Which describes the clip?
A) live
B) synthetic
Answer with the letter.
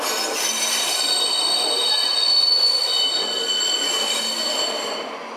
A